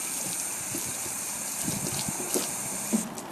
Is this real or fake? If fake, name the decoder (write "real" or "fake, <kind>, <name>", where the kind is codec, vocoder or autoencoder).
real